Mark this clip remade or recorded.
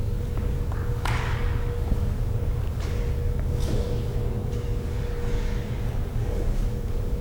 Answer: remade